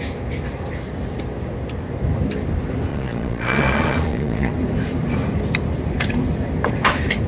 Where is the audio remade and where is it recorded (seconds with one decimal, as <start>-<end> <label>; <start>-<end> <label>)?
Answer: 0.0-2.9 recorded; 2.9-4.5 remade; 4.5-7.3 recorded